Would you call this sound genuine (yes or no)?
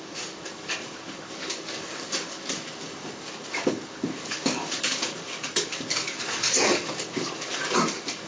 no